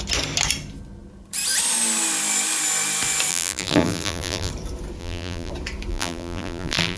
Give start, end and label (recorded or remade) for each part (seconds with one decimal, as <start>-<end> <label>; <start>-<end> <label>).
0.0-3.3 recorded; 3.3-4.5 remade; 4.5-5.0 recorded; 5.0-5.5 remade; 5.5-5.9 recorded; 5.9-7.0 remade